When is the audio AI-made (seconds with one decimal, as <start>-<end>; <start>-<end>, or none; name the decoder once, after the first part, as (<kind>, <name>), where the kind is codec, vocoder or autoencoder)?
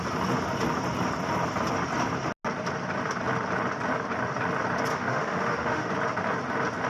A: 4.9-5.9 (autoencoder, DAC-VAE)